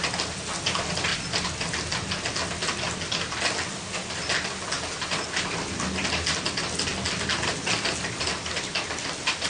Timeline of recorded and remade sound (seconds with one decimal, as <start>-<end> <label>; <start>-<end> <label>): 0.0-9.5 recorded